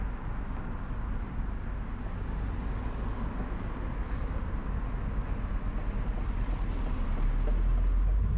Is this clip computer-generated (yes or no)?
no